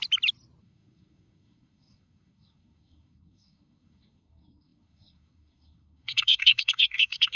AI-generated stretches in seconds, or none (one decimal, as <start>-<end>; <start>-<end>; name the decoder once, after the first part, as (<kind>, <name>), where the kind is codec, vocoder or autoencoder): 0.6-7.4 (codec, SNAC)